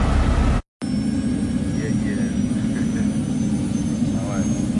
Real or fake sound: real